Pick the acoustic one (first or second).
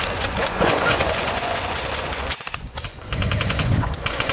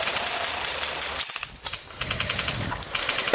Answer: second